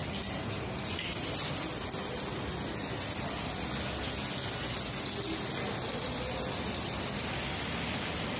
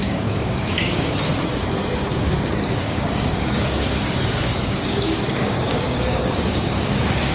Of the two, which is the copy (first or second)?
second